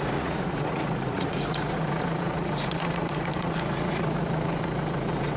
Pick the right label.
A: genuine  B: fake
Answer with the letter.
B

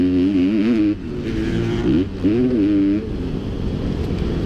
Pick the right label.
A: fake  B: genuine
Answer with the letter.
B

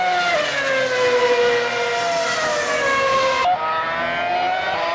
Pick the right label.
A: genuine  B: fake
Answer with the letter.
A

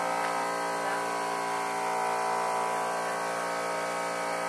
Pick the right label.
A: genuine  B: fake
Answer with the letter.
A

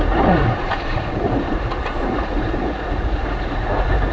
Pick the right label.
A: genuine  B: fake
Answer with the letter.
B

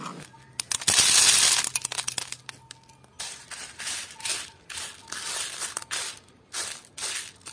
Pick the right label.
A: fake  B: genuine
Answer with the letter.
B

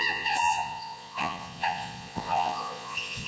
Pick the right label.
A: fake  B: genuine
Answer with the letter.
A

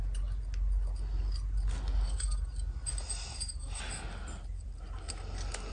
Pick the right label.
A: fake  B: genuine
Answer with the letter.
B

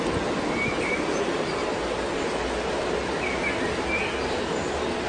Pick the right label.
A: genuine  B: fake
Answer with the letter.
A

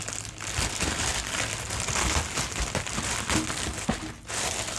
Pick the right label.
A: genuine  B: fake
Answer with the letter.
A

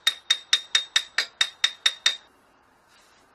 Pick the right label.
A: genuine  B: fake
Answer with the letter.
A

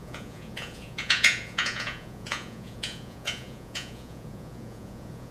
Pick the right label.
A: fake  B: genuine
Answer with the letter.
A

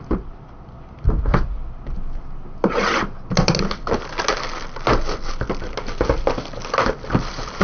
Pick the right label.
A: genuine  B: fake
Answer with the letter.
A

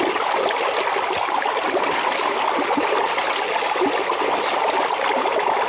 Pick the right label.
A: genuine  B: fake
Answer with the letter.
A